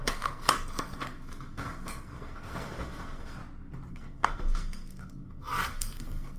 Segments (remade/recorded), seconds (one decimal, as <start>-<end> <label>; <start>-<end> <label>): 0.0-3.4 remade; 3.4-3.9 recorded; 3.9-6.4 remade